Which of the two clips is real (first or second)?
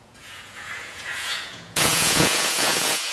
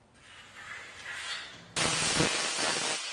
second